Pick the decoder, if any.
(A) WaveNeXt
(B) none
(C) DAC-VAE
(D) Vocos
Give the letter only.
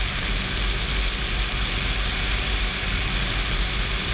B